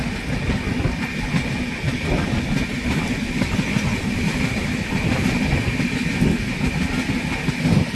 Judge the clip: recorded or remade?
recorded